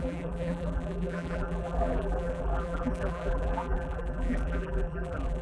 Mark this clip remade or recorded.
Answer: remade